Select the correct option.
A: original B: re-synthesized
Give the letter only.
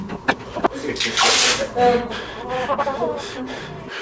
A